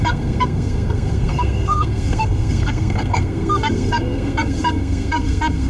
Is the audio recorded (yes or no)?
no